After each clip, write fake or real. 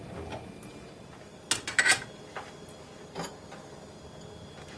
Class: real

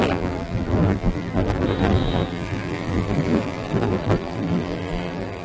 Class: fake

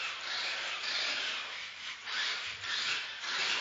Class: fake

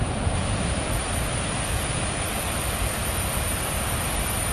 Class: fake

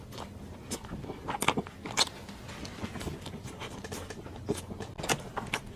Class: real